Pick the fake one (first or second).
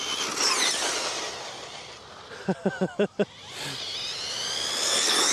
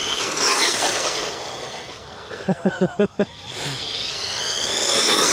second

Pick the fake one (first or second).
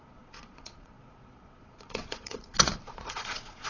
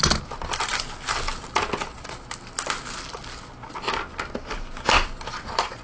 first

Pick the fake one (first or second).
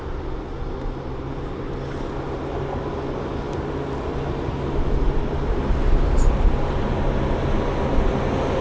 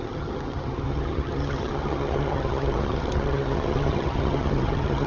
second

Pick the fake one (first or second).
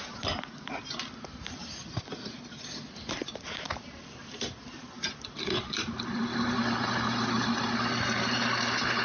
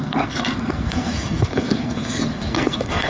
second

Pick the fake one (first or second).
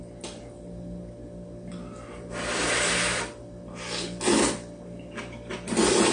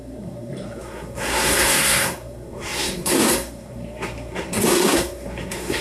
second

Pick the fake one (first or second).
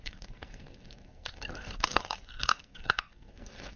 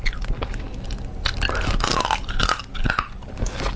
first